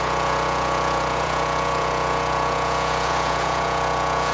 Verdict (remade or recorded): remade